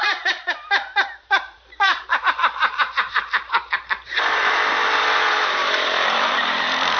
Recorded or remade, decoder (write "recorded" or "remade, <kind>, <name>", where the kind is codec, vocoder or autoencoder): remade, vocoder, BigVGAN v2